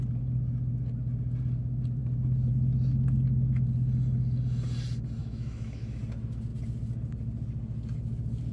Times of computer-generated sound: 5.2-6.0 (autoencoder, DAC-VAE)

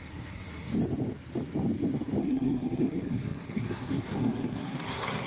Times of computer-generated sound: 0.0-0.7 (codec, SNAC); 2.2-5.3

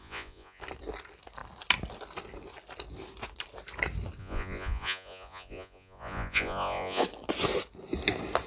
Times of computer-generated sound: 0.0-0.6 (vocoder, Vocos); 4.2-7.0

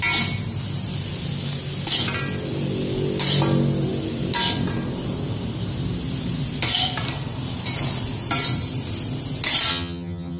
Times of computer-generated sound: 9.7-10.4 (vocoder, HiFi-GAN)

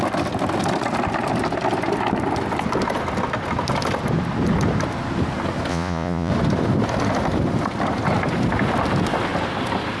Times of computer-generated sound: 5.7-6.3 (vocoder, Vocos)